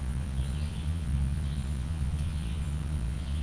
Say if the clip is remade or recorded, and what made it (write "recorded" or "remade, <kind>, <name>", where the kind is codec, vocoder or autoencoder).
remade, vocoder, Vocos